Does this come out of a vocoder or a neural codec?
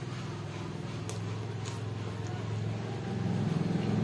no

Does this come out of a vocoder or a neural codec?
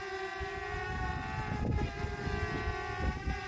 no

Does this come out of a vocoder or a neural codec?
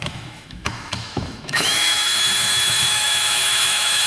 yes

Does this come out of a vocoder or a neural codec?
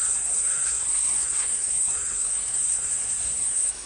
yes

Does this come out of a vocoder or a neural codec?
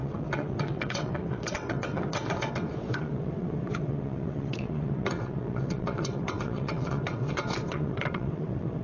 yes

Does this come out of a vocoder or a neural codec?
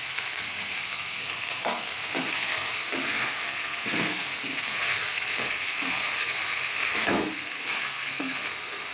yes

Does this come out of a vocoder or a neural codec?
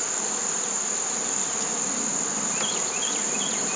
no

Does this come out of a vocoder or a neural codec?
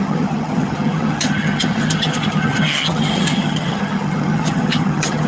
yes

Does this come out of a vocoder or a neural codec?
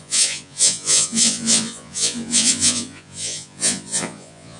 yes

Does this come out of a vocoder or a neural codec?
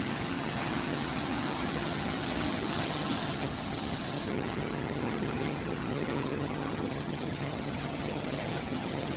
yes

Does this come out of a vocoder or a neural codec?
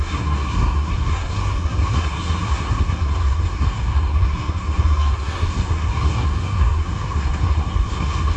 yes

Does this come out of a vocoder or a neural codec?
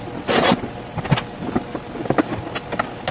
no